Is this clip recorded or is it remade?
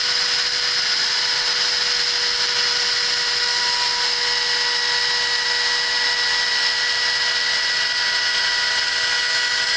recorded